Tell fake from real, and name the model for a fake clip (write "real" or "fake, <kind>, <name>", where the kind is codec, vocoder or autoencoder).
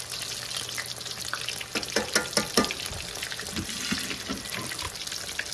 real